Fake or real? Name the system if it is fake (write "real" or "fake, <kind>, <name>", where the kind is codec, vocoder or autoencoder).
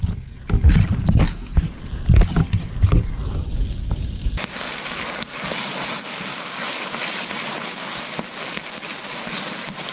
real